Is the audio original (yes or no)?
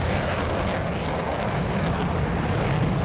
yes